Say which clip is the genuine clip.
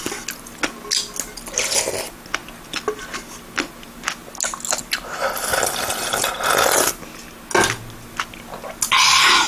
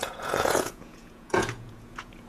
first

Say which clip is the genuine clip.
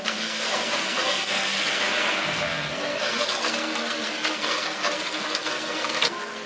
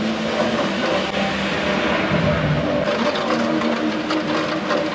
second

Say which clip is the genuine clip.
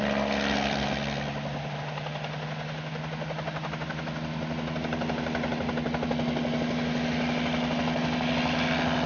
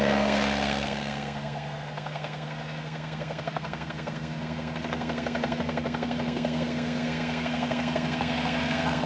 first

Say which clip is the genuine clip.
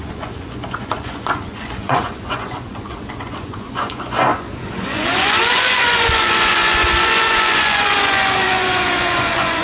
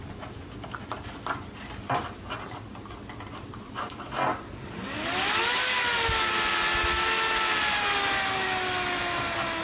second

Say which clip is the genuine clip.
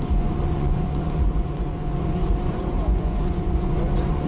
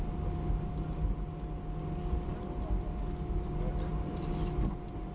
second